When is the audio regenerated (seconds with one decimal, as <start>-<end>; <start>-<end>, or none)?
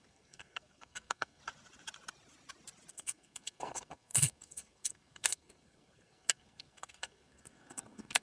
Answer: 0.0-1.4; 2.9-8.2